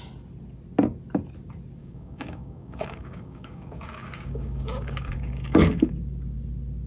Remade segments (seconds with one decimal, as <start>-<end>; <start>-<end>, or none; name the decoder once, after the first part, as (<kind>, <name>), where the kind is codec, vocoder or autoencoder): 1.8-5.9 (codec, DAC)